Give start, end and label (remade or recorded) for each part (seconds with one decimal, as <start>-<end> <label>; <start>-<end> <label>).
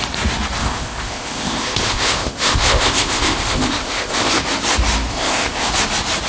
0.0-0.6 recorded; 0.6-4.4 remade; 4.4-5.1 recorded; 5.1-5.7 remade; 5.7-6.3 recorded